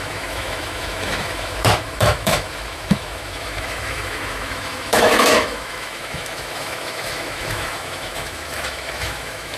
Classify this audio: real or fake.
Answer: fake